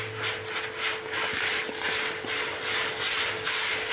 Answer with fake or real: real